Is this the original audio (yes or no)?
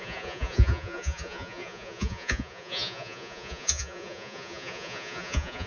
no